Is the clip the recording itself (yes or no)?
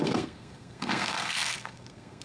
no